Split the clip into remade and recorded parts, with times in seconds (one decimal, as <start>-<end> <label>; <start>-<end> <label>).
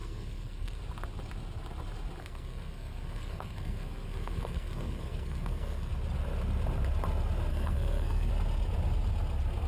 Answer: 0.0-0.8 remade; 0.8-2.2 recorded; 2.2-5.9 remade; 5.9-7.5 recorded; 7.5-8.3 remade; 8.3-9.7 recorded